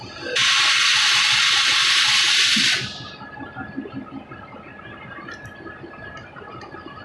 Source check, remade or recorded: recorded